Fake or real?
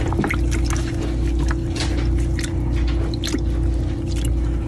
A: real